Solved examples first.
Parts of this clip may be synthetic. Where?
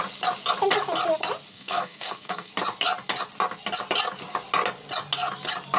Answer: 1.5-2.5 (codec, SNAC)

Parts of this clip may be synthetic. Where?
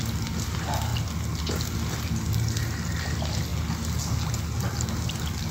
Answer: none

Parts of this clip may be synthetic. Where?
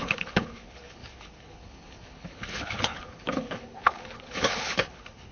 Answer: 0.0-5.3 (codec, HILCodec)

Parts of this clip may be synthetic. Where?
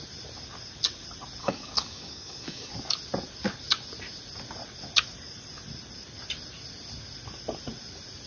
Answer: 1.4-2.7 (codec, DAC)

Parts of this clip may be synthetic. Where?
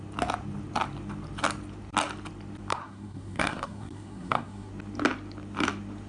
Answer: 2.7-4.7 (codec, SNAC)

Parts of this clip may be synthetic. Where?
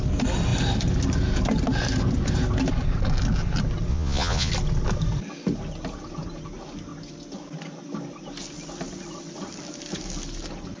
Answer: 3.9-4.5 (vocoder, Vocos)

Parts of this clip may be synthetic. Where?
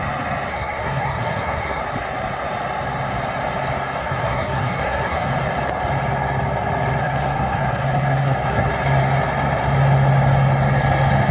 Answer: 0.5-1.8 (codec, SNAC); 4.0-5.3; 7.0-8.7